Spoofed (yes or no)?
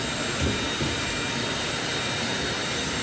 no